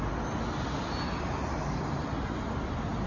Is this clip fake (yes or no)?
no